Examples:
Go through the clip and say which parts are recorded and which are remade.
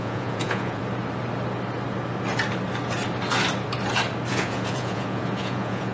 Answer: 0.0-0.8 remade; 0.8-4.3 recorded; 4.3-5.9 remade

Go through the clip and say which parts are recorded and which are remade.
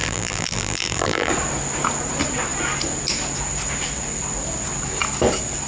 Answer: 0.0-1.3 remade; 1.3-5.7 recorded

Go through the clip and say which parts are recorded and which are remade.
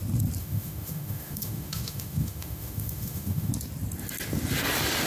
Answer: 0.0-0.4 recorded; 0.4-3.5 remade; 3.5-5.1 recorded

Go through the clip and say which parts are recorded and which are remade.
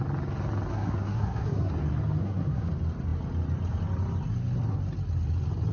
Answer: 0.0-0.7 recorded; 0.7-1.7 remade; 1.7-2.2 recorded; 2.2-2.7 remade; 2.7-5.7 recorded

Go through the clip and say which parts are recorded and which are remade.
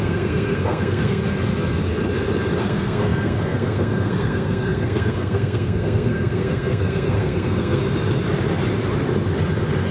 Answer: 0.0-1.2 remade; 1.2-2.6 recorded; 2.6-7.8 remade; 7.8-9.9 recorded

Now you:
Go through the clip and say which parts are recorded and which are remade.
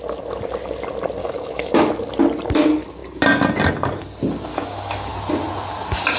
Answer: 0.0-1.2 recorded; 1.2-1.9 remade; 1.9-4.5 recorded; 4.5-5.1 remade; 5.1-6.2 recorded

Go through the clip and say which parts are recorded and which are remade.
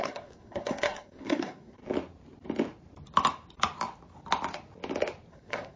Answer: 0.0-1.8 remade; 1.8-5.3 recorded; 5.3-5.8 remade